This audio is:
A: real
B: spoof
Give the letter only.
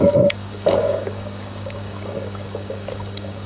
B